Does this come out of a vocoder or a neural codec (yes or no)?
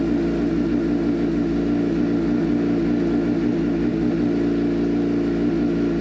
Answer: no